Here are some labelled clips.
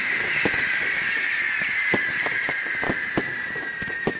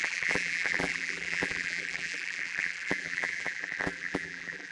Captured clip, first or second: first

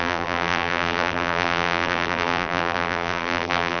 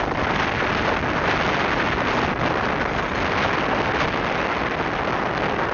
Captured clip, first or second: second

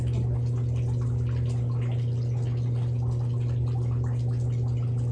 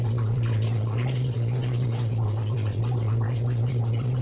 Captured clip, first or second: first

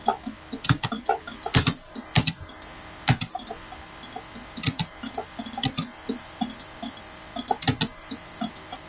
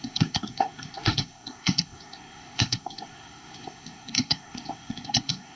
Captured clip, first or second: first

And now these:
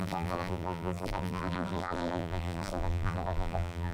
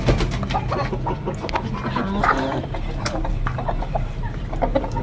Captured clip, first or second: second